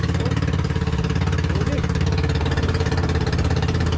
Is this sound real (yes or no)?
no